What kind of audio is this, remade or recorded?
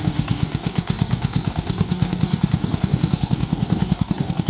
remade